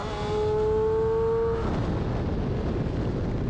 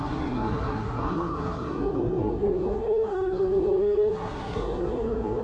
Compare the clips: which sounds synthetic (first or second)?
second